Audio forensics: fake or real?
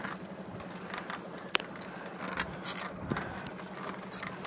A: fake